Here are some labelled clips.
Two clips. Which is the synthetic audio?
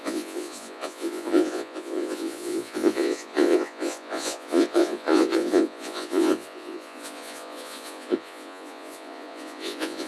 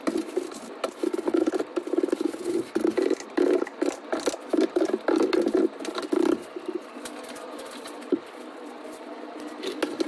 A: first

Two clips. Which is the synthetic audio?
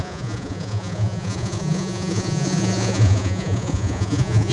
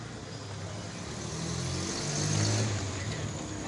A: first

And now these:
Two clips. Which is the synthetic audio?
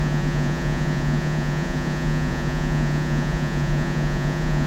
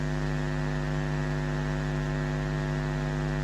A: first